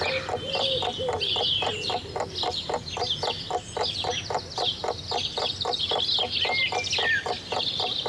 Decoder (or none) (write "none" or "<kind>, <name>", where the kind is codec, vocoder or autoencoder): none